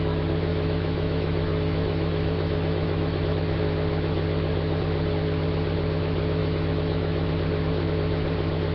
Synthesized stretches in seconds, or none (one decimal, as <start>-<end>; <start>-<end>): 0.5-3.2; 6.4-7.3